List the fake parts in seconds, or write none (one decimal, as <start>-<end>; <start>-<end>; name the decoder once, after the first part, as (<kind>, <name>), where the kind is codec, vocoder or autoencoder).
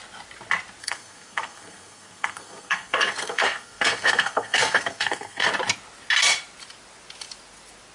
0.8-5.5 (codec, SNAC)